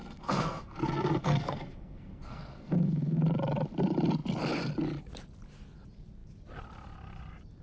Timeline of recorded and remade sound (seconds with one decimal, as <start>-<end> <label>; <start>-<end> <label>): 0.0-3.2 remade; 3.2-7.6 recorded